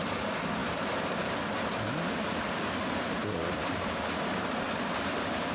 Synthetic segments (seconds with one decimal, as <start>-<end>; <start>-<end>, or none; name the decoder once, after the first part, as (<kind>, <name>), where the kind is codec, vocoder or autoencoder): 3.2-4.8 (vocoder, BigVGAN v2)